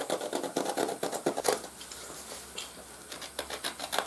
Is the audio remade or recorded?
recorded